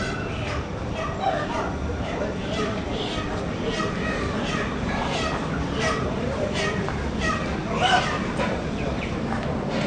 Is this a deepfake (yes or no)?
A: yes